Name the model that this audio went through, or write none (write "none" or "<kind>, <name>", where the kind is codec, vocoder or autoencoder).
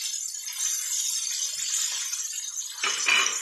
none